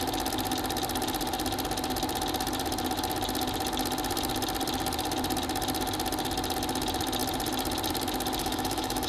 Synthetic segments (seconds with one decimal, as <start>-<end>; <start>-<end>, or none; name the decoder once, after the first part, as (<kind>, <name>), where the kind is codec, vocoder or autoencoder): 8.4-9.1 (autoencoder, DAC-VAE)